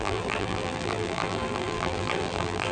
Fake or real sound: fake